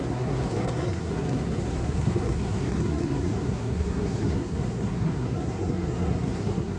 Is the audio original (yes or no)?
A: no